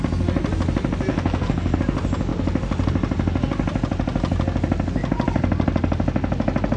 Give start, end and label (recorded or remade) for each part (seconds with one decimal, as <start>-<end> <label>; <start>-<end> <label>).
0.0-1.1 recorded; 1.1-1.8 remade; 1.8-6.8 recorded